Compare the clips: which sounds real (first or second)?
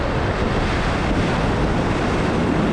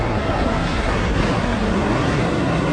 first